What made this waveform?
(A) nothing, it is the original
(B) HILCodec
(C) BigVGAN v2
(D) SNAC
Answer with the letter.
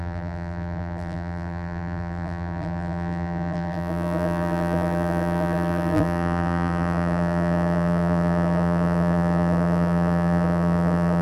C